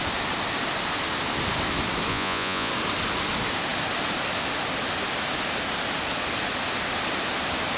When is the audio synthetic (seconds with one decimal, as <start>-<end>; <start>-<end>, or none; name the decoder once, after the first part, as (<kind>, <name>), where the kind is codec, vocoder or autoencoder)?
2.1-2.7 (vocoder, Vocos)

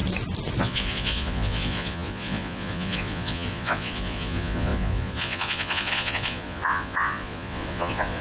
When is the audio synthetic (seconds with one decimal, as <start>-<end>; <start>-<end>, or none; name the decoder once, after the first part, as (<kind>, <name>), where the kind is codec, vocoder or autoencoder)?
0.6-8.2 (vocoder, Vocos)

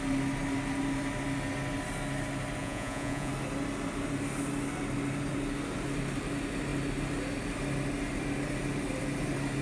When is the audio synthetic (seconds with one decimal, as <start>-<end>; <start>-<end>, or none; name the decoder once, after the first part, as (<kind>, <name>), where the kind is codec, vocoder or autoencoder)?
2.6-3.3 (vocoder, Vocos)

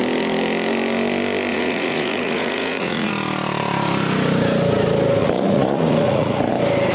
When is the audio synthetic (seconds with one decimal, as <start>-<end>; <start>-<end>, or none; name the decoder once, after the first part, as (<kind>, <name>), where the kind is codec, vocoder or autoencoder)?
1.5-3.1 (vocoder, Vocos); 5.2-6.5